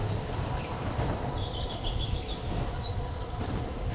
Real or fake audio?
real